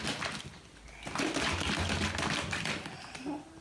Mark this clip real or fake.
real